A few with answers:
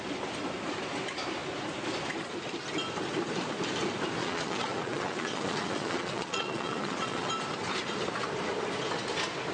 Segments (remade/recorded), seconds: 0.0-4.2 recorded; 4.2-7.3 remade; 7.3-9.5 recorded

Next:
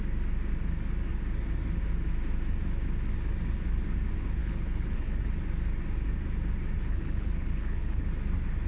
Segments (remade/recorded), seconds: 0.0-4.4 recorded; 4.4-5.2 remade; 5.2-6.8 recorded; 6.8-8.1 remade; 8.1-8.7 recorded

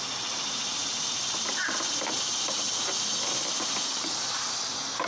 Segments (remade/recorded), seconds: 0.0-5.1 recorded